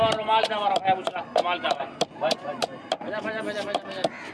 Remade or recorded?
recorded